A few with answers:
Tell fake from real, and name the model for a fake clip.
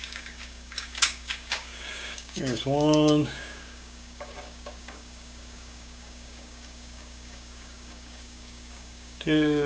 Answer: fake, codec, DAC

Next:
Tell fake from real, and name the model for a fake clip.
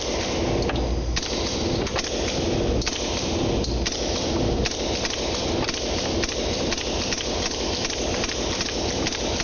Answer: real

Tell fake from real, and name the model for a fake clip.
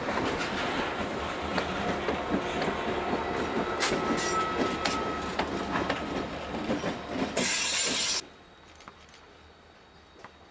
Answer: real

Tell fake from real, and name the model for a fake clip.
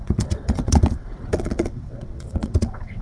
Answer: fake, vocoder, WaveNeXt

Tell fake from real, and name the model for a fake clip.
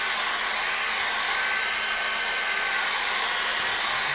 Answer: real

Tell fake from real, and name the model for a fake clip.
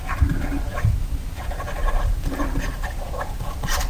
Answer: real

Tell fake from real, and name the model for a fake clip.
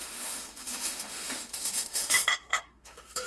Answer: fake, autoencoder, DAC-VAE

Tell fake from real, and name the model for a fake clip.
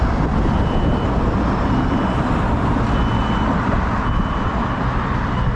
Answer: fake, vocoder, BigVGAN v2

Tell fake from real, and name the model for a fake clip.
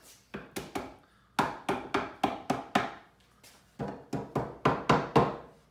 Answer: real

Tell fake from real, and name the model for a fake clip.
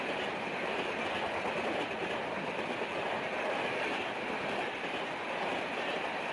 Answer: real